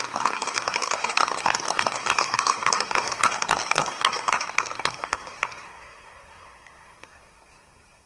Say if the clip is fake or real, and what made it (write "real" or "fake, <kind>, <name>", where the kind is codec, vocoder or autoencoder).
fake, codec, SNAC